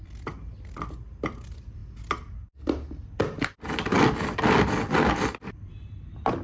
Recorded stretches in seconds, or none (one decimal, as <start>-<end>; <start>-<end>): 0.0-6.4